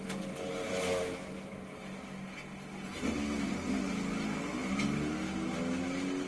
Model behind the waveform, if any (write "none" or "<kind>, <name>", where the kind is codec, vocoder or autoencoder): none